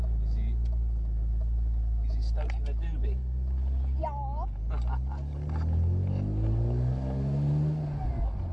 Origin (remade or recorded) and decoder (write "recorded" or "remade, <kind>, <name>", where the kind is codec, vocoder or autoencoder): recorded